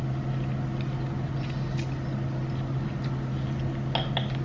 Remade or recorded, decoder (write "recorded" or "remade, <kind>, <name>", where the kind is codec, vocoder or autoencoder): recorded